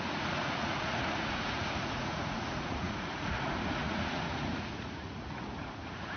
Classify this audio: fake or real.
fake